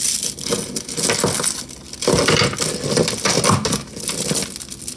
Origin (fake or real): real